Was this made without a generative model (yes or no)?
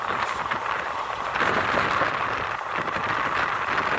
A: yes